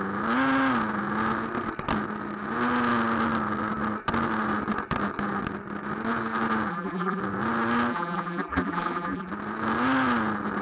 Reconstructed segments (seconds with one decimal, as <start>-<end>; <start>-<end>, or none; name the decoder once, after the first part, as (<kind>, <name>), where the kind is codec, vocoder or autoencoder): 6.7-7.2 (vocoder, BigVGAN v2); 7.9-9.3